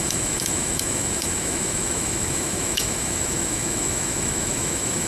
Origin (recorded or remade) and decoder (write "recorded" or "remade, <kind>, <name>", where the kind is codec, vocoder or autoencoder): remade, autoencoder, DAC-VAE